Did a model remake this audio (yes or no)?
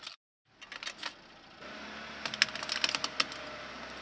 no